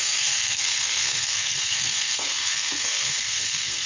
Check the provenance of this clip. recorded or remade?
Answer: remade